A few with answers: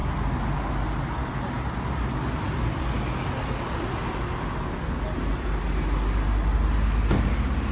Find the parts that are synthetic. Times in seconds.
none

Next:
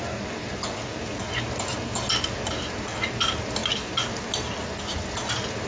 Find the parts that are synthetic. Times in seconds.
none

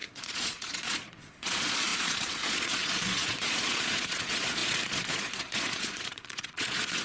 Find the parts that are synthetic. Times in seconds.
0.0-7.0 (vocoder, Vocos)

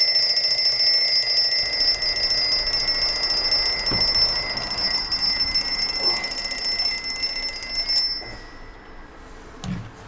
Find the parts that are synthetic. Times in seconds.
none

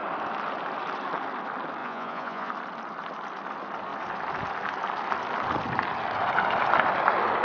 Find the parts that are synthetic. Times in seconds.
1.8-2.5 (vocoder, Vocos)

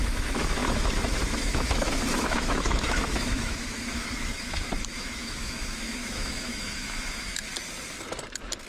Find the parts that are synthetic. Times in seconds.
0.0-7.5 (autoencoder, DAC-VAE)

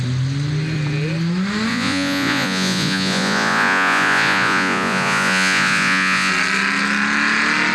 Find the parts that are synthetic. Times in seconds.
1.7-6.3 (vocoder, Vocos)

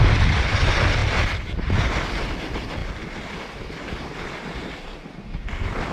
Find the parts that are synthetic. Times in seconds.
none